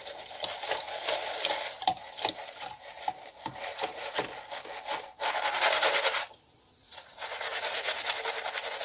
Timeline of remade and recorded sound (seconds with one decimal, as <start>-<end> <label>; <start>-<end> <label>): 0.0-3.7 recorded; 3.7-4.2 remade; 4.2-6.8 recorded; 6.8-8.1 remade; 8.1-8.8 recorded